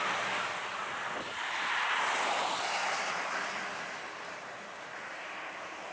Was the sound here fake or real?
real